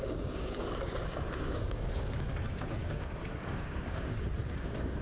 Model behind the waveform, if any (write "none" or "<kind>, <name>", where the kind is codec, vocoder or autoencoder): codec, DAC